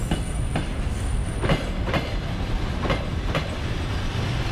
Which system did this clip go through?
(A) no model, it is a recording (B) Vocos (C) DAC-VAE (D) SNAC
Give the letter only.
A